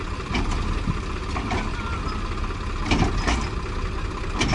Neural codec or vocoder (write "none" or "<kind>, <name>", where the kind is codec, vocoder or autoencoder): none